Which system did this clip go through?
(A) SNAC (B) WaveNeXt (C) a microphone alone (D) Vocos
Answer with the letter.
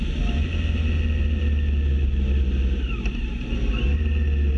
C